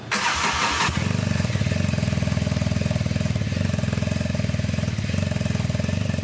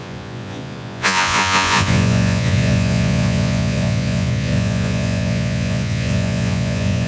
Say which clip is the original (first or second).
first